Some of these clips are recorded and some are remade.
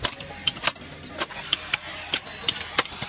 recorded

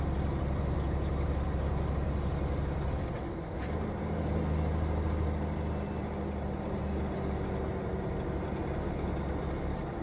recorded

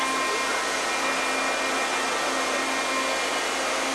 recorded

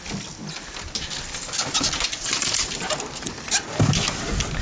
recorded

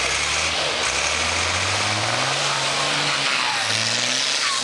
recorded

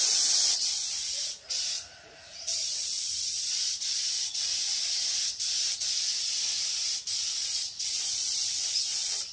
remade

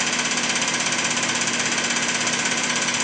recorded